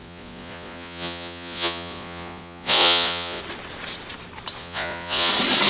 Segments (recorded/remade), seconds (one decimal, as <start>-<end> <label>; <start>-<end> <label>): 0.0-3.4 remade; 3.4-4.6 recorded; 4.6-5.3 remade; 5.3-5.7 recorded